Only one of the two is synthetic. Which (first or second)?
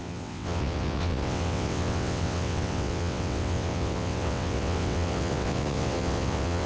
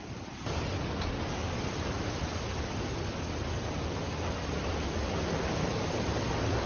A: first